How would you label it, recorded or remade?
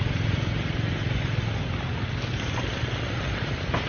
recorded